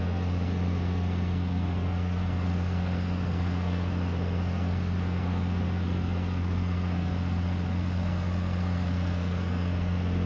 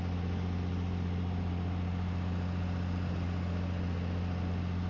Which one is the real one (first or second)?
second